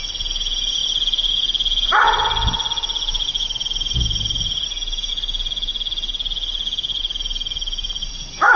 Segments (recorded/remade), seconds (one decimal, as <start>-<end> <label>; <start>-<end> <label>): 0.0-8.6 recorded